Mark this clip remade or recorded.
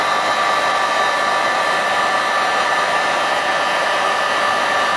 recorded